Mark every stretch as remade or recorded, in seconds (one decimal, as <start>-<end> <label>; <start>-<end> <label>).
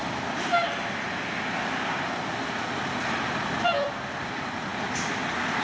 0.0-0.6 remade; 0.6-3.3 recorded; 3.3-4.7 remade; 4.7-5.6 recorded